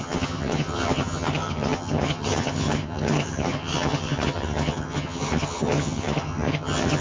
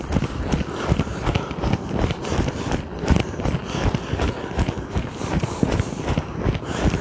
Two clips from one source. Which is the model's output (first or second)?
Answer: first